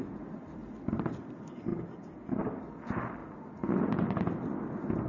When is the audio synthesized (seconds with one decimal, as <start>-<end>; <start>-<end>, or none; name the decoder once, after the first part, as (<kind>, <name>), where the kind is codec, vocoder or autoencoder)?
none